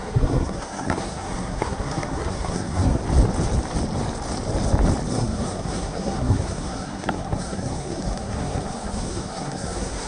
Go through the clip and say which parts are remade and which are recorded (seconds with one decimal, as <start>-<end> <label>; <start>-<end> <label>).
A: 0.0-3.0 remade; 3.0-5.1 recorded; 5.1-10.1 remade